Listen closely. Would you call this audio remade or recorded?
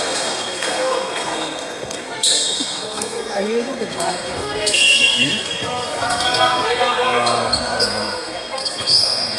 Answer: remade